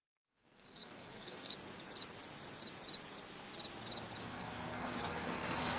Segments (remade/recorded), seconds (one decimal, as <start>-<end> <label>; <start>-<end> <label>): 0.0-1.5 remade; 1.5-4.2 recorded; 4.2-5.8 remade